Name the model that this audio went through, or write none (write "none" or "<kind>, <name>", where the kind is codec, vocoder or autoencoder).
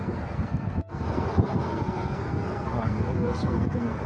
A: codec, SNAC